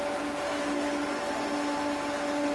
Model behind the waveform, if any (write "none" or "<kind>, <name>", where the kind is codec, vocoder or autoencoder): none